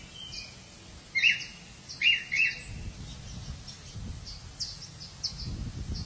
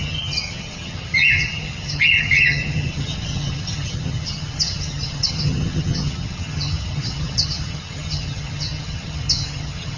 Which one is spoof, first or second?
second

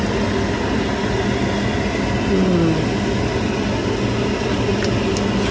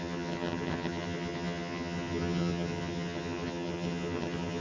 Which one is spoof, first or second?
second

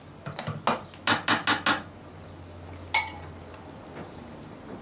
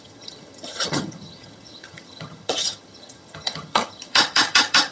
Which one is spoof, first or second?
second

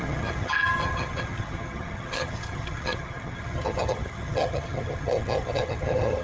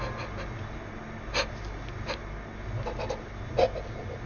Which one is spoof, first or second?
first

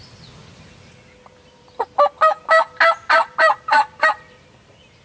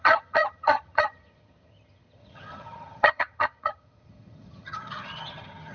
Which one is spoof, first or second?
second